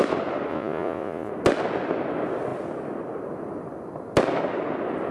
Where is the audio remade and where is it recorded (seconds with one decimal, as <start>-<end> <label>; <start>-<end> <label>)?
0.0-0.5 recorded; 0.5-1.3 remade; 1.3-5.1 recorded